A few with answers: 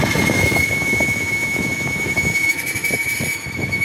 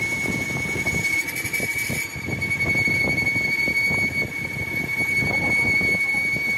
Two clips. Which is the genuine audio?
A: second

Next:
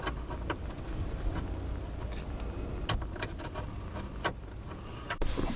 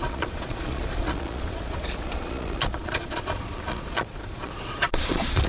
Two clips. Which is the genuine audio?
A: first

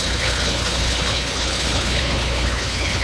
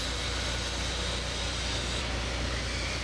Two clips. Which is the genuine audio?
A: second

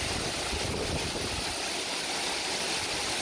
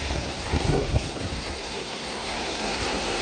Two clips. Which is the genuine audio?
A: first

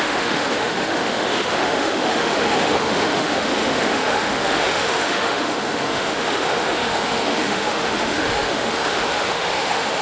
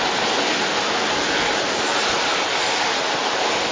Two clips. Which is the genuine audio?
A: second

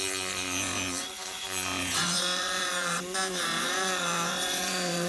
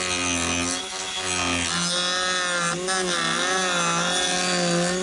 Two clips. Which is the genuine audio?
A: second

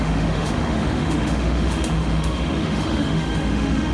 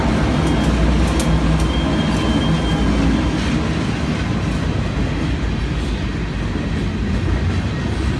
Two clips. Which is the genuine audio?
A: second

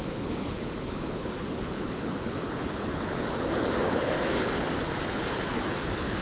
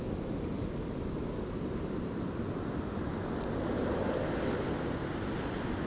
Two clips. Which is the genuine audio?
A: second